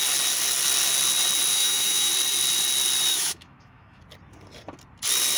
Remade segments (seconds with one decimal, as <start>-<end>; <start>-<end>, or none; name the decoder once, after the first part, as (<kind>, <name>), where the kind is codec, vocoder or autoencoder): 1.5-2.1 (autoencoder, DAC-VAE); 3.1-4.0